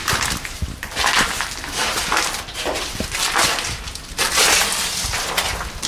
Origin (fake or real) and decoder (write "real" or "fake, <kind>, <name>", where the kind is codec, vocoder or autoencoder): real